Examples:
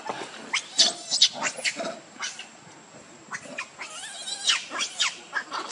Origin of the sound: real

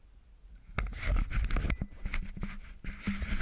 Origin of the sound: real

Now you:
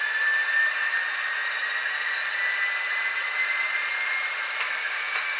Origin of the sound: real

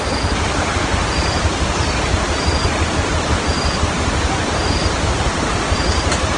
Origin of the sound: fake